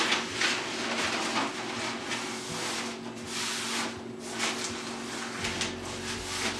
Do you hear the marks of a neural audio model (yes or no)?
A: no